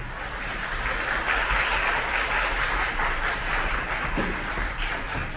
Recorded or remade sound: recorded